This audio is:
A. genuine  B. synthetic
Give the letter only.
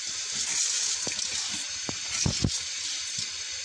A